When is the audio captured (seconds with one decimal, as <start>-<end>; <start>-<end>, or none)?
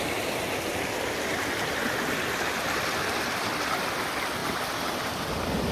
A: 0.0-1.3; 3.1-4.4; 5.3-5.7